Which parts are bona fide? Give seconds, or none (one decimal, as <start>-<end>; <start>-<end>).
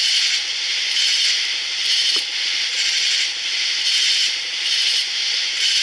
0.0-5.8